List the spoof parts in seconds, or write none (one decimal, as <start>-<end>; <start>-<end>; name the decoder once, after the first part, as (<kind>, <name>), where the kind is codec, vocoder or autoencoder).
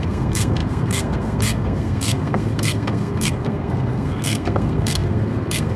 0.0-5.8 (codec, SNAC)